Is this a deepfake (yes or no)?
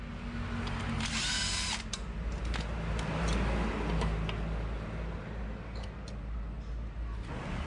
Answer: no